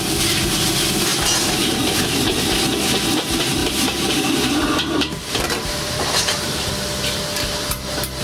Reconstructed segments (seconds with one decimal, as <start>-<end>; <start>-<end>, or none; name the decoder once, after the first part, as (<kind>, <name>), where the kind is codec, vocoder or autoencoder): 3.6-6.7 (vocoder, BigVGAN v2)